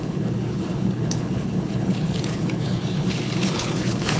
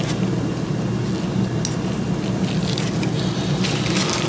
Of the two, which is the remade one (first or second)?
first